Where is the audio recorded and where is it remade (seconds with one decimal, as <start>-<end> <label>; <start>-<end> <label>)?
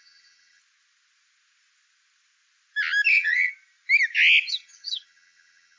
0.0-0.6 remade; 0.6-3.1 recorded; 3.1-3.5 remade; 3.5-4.5 recorded; 4.5-5.8 remade